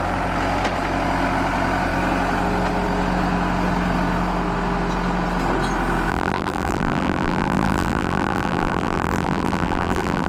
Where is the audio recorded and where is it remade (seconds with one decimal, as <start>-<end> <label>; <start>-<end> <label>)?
0.0-6.1 recorded; 6.1-10.3 remade